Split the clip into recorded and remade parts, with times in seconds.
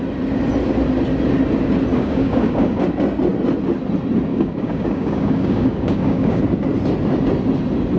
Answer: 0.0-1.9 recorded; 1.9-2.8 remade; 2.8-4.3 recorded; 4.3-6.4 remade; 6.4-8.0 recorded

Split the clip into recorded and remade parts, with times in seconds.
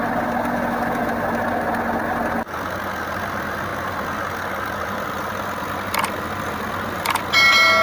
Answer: 0.0-7.8 recorded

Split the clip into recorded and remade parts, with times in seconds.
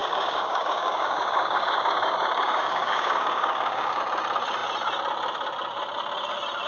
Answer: 0.0-4.0 remade; 4.0-6.7 recorded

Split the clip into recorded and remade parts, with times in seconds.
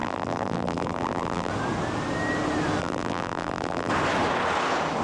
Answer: 0.0-1.5 remade; 1.5-2.8 recorded; 2.8-3.9 remade; 3.9-5.0 recorded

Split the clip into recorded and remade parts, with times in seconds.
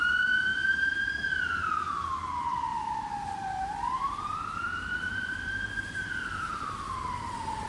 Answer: 0.0-0.5 recorded; 0.5-1.4 remade; 1.4-2.7 recorded; 2.7-7.2 remade; 7.2-7.7 recorded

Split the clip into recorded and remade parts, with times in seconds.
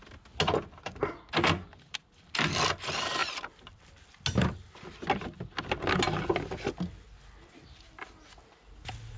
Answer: 0.0-9.2 recorded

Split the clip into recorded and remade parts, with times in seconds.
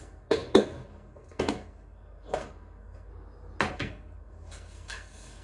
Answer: 0.0-3.1 remade; 3.1-3.7 recorded; 3.7-5.4 remade